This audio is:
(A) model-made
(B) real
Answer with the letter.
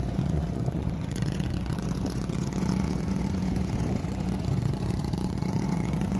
A